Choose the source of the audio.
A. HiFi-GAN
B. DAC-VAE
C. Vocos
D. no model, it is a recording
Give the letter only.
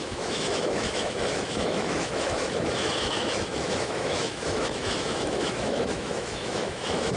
B